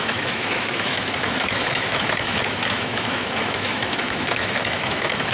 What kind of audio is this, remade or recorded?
remade